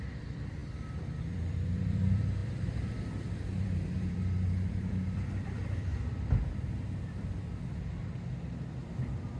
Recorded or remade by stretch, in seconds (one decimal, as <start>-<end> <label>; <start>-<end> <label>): 0.0-0.6 remade; 0.6-1.3 recorded; 1.3-5.9 remade; 5.9-8.7 recorded; 8.7-9.4 remade